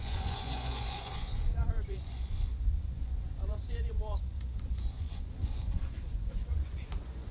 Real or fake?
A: fake